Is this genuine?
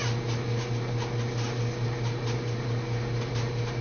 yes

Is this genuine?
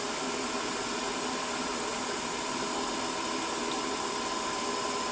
yes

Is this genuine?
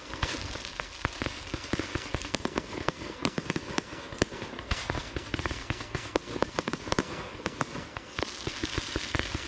no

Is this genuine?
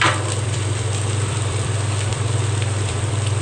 no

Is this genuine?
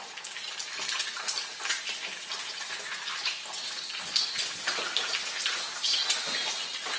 yes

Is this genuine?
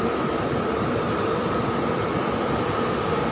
yes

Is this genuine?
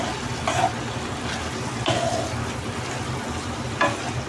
yes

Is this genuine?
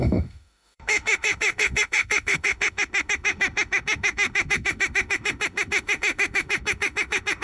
no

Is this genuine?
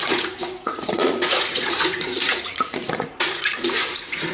no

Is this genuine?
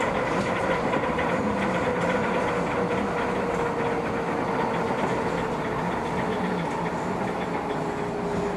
yes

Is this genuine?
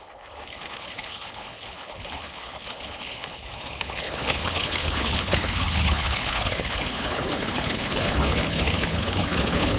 no